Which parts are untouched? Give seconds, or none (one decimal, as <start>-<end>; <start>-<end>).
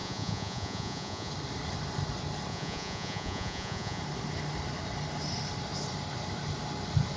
1.3-2.5; 4.0-7.2